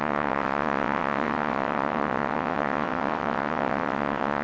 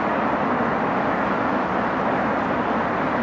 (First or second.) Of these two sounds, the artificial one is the first